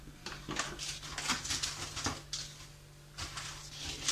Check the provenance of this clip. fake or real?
real